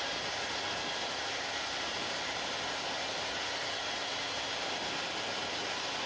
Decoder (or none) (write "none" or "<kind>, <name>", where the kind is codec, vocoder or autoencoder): none